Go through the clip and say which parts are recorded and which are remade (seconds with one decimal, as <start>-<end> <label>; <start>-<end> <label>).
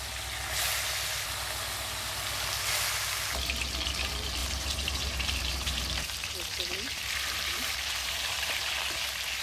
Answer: 0.0-4.4 recorded; 4.4-8.8 remade; 8.8-9.4 recorded